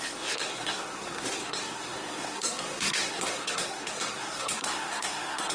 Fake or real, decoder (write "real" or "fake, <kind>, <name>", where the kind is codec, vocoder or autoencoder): fake, codec, SNAC